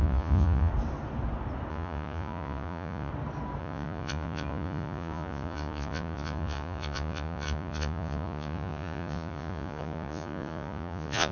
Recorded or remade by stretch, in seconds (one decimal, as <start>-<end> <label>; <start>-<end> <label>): 0.0-0.7 remade; 0.7-1.7 recorded; 1.7-3.1 remade; 3.1-3.6 recorded; 3.6-11.3 remade